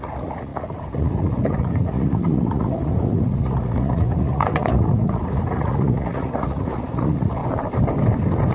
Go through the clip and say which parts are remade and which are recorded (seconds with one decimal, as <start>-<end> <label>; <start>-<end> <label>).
0.0-7.4 remade; 7.4-8.5 recorded